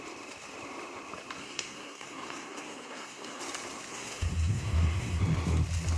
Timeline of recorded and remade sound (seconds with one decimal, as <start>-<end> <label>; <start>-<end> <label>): 0.0-1.4 recorded; 1.4-3.4 remade; 3.4-3.9 recorded; 3.9-5.2 remade; 5.2-6.0 recorded